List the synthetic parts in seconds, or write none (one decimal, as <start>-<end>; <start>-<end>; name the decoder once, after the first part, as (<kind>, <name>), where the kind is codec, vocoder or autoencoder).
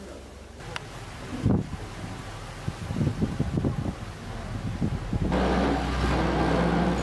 none